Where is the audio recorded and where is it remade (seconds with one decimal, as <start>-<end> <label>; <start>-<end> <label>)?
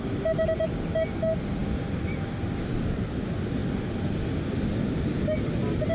0.0-1.6 recorded; 1.6-2.3 remade; 2.3-3.6 recorded; 3.6-5.9 remade